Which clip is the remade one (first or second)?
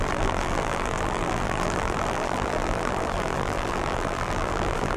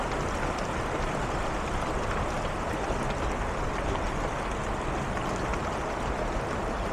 first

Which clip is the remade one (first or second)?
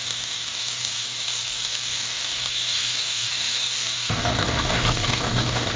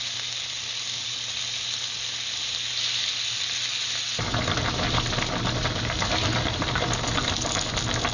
first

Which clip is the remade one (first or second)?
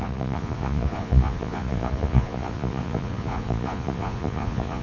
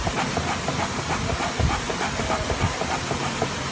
first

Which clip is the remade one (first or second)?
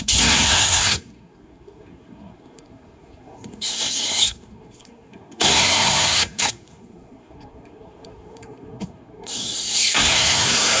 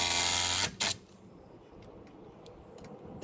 first